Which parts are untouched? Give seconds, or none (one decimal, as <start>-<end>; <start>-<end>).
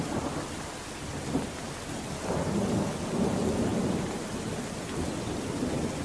0.0-6.0